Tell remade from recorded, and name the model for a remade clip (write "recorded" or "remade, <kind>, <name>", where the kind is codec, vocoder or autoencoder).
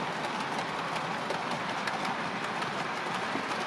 recorded